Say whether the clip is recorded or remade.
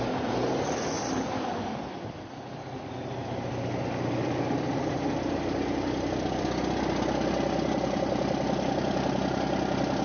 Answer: recorded